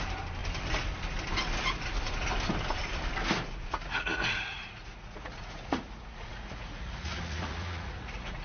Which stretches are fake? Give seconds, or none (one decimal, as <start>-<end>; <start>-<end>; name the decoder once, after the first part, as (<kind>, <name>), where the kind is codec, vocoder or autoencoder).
4.0-8.4 (vocoder, Vocos)